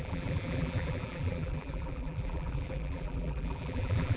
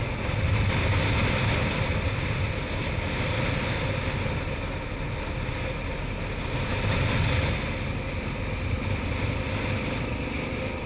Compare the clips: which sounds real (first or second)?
second